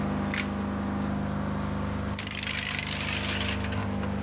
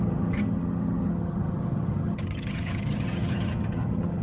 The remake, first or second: second